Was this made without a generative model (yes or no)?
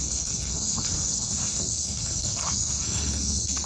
no